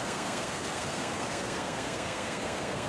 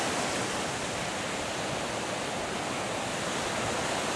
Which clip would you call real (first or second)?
second